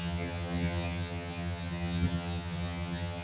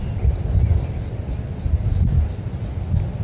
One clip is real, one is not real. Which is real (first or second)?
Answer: second